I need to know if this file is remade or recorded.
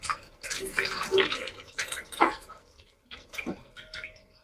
remade